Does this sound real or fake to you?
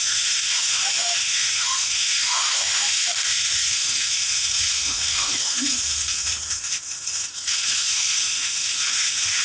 fake